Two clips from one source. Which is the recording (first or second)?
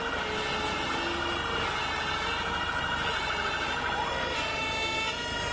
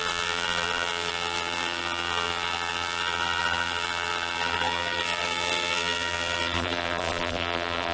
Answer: first